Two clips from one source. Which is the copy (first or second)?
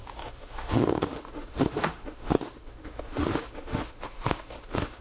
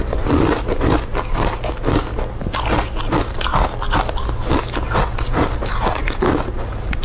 first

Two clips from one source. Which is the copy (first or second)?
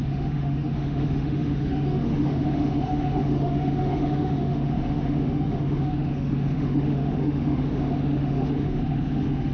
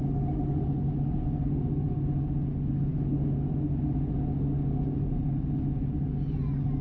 first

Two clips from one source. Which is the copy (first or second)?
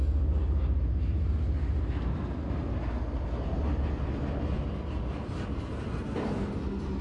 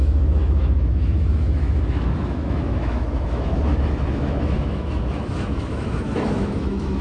second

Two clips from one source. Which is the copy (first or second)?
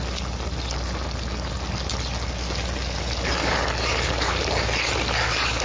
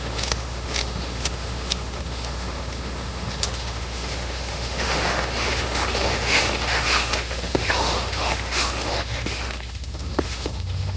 second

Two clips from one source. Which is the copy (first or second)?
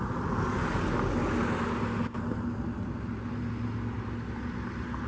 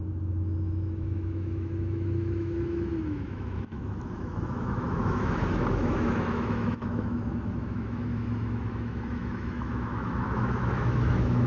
second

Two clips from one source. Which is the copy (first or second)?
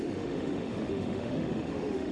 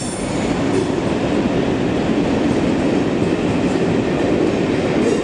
first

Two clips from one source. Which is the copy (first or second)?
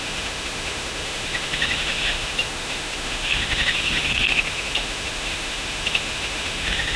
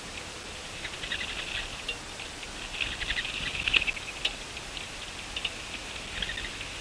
first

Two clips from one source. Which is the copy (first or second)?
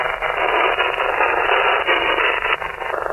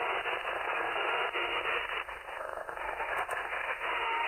second